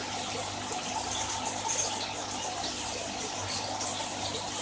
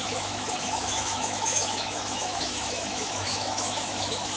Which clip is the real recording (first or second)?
first